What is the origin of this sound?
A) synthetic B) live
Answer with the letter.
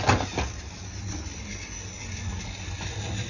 B